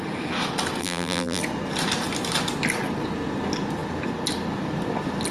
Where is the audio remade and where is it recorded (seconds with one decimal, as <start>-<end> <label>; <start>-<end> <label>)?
0.0-0.8 recorded; 0.8-1.4 remade; 1.4-5.3 recorded